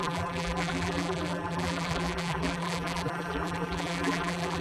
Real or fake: fake